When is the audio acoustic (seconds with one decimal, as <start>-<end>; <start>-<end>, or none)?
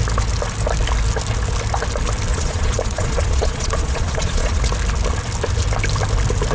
0.0-2.3; 4.6-6.5